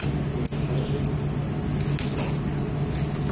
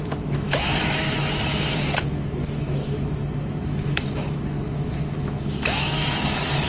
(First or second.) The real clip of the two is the first